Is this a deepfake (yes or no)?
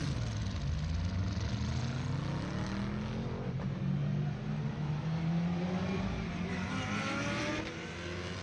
no